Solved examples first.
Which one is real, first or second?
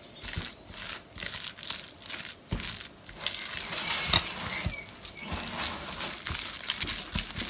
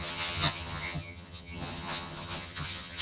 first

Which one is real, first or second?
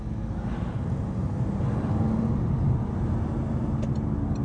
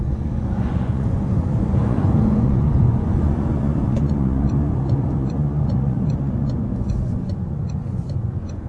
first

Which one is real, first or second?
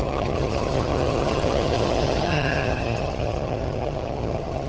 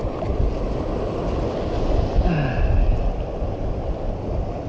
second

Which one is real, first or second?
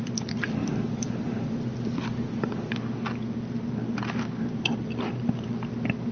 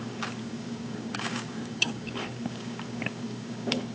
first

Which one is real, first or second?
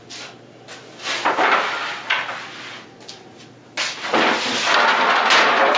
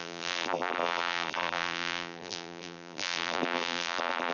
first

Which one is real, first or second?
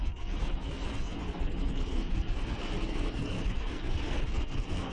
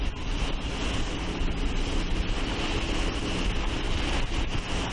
second